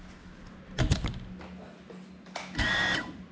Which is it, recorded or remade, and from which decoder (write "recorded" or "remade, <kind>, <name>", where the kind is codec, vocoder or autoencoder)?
recorded